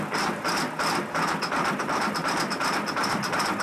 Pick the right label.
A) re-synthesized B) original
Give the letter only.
A